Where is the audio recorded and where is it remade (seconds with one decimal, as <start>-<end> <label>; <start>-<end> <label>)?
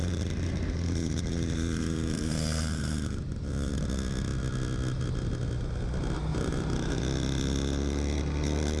0.0-3.7 remade; 3.7-6.3 recorded; 6.3-7.0 remade; 7.0-8.8 recorded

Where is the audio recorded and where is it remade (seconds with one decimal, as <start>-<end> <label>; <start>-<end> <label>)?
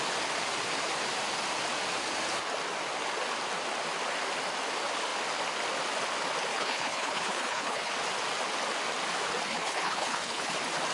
0.0-6.5 recorded; 6.5-7.9 remade; 7.9-9.5 recorded; 9.5-10.5 remade; 10.5-10.9 recorded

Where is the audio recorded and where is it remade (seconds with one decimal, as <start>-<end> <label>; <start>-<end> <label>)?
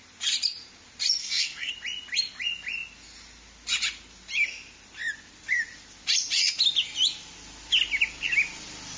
0.0-1.2 recorded; 1.2-1.7 remade; 1.7-9.0 recorded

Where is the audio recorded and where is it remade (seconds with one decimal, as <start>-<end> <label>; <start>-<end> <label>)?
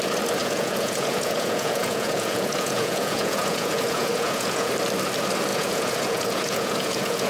0.0-0.4 recorded; 0.4-4.7 remade; 4.7-5.5 recorded; 5.5-7.3 remade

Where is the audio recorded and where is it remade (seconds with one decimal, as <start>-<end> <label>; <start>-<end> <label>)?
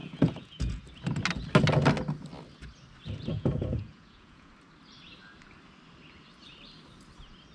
0.0-0.8 remade; 0.8-3.3 recorded; 3.3-4.5 remade; 4.5-7.5 recorded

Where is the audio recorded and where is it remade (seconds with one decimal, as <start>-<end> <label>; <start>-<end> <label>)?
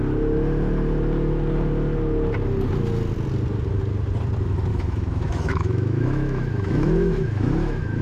0.0-4.7 recorded; 4.7-8.0 remade